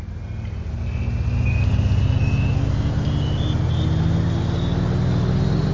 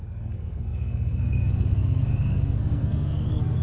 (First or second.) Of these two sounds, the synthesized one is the second